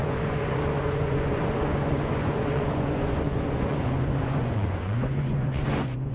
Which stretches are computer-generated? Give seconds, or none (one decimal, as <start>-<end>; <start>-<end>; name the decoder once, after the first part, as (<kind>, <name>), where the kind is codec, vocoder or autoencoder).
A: 0.0-6.1 (vocoder, Vocos)